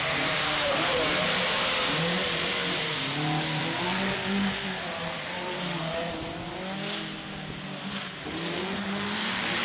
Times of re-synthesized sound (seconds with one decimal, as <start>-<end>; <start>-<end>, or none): 0.0-2.6; 3.6-6.2; 7.5-9.6